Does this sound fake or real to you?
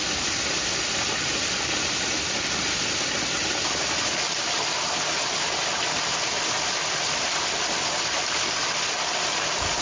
real